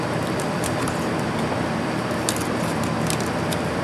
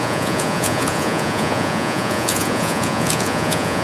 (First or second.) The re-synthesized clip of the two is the second